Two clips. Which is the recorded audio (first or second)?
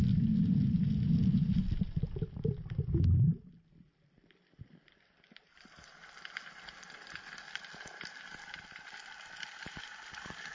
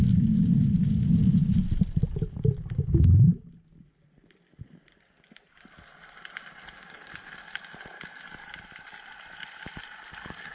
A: second